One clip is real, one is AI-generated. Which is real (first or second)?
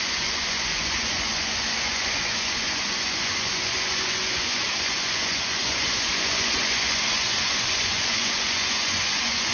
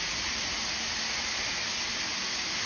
second